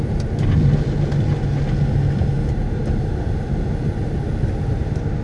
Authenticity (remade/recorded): recorded